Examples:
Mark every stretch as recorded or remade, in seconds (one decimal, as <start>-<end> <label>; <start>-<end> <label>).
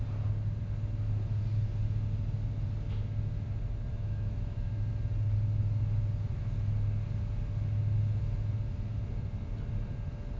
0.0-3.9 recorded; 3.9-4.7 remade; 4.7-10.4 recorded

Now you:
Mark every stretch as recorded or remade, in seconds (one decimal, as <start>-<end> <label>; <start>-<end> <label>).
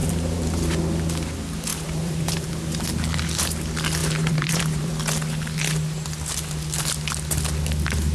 0.0-0.7 remade; 0.7-1.7 recorded; 1.7-2.5 remade; 2.5-4.0 recorded; 4.0-4.9 remade; 4.9-8.1 recorded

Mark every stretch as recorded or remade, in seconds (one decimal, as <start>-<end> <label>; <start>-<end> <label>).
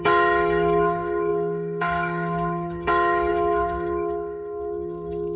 0.0-5.4 remade